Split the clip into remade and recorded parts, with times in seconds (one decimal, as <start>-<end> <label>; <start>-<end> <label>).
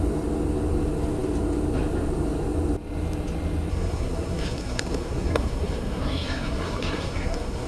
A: 0.0-3.7 recorded; 3.7-7.7 remade